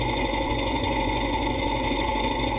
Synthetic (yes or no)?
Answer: yes